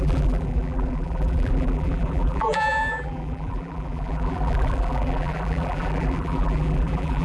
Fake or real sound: fake